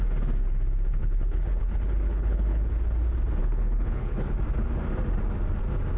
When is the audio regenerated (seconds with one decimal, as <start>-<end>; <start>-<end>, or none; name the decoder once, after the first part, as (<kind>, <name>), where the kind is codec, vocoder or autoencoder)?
1.0-2.7 (codec, HILCodec); 3.4-4.2

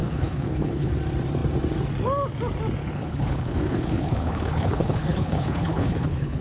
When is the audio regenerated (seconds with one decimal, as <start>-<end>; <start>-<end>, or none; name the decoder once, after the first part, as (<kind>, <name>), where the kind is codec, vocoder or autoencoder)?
0.0-0.9 (codec, HILCodec); 2.8-6.4

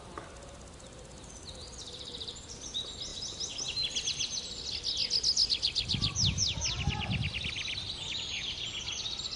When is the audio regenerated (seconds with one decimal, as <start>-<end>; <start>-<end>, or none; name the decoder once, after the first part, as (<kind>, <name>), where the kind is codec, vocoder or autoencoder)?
none